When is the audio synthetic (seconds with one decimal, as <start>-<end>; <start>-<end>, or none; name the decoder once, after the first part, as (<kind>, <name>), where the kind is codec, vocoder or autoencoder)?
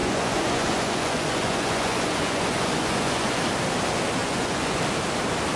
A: 0.0-3.4 (vocoder, Vocos); 4.2-4.8